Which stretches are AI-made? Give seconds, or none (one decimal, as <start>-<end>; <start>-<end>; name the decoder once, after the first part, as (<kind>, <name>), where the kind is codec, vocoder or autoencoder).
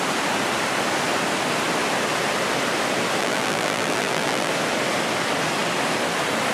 3.2-4.5 (vocoder, BigVGAN v2)